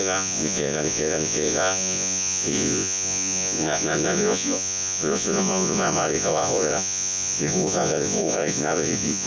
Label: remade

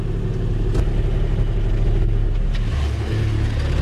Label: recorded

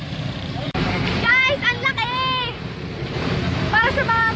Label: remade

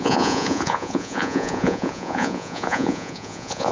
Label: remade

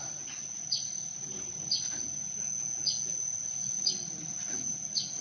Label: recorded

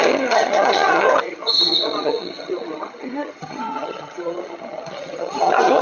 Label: remade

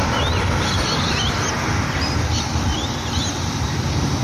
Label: remade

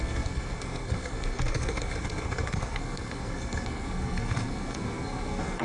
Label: remade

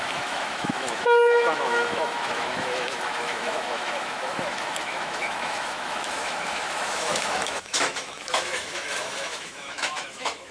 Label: remade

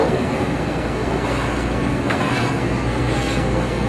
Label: remade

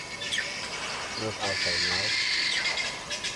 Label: remade